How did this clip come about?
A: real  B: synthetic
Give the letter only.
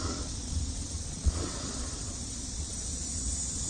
B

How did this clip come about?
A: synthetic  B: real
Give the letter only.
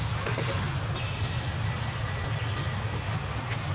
B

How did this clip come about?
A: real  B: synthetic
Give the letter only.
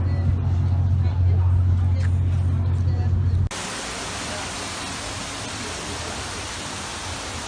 A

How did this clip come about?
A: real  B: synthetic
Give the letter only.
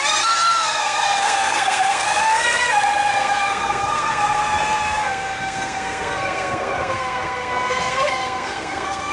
B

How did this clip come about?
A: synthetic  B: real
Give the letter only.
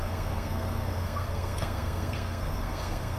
A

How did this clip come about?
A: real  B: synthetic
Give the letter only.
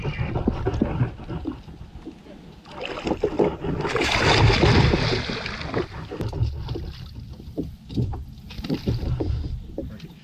A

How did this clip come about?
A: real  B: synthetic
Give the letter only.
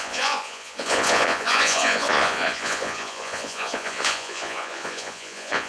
B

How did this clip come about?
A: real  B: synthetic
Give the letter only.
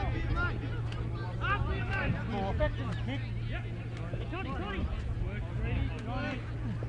A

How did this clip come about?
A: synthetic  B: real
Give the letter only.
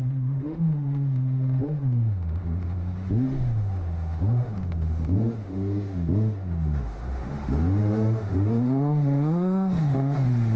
A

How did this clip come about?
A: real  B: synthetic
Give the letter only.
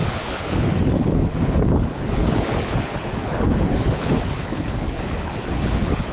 B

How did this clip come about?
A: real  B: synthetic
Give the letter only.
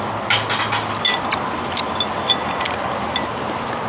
A